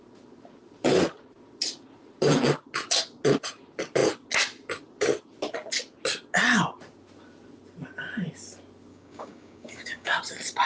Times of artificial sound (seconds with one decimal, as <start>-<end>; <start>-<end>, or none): 8.9-10.2